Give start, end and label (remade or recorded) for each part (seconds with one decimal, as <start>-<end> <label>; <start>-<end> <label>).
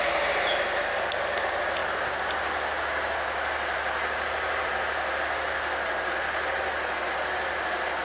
0.0-8.0 recorded